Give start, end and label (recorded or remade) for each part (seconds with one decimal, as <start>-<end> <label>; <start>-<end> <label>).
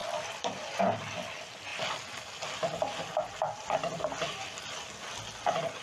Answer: 0.0-0.8 remade; 0.8-1.7 recorded; 1.7-5.0 remade; 5.0-5.8 recorded